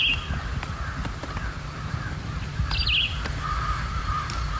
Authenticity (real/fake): real